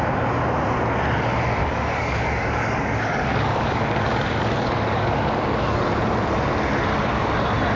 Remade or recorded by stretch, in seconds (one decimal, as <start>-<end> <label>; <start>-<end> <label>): 0.0-1.6 recorded; 1.6-5.8 remade; 5.8-7.8 recorded